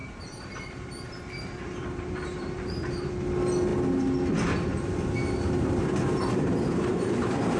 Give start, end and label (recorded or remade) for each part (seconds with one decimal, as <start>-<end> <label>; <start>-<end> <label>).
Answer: 0.0-3.1 remade; 3.1-4.7 recorded; 4.7-7.6 remade

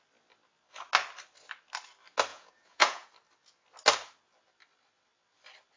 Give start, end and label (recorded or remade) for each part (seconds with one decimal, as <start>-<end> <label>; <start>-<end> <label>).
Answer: 0.0-2.3 recorded; 2.3-3.1 remade; 3.1-5.8 recorded

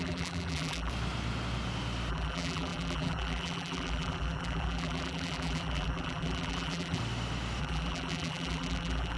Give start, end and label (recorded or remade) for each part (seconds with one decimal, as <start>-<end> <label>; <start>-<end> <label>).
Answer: 0.0-0.9 remade; 0.9-2.1 recorded; 2.1-7.0 remade; 7.0-7.6 recorded; 7.6-9.2 remade